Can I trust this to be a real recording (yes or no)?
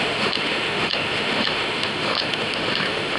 no